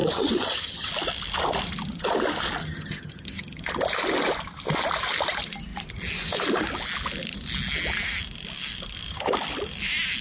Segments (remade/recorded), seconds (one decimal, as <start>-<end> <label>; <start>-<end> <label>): 0.0-0.9 remade; 0.9-2.6 recorded; 2.6-3.6 remade; 3.6-10.2 recorded